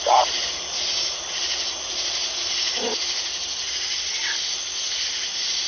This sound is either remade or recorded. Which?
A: recorded